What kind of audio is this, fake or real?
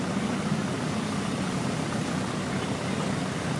real